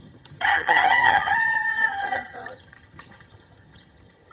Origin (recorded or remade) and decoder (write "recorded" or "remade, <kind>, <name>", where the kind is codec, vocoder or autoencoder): remade, vocoder, HiFi-GAN